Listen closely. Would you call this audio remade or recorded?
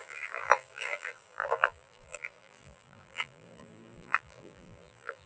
remade